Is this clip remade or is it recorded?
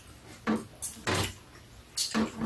recorded